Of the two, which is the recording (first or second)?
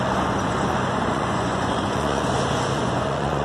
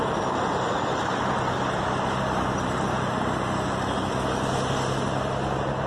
second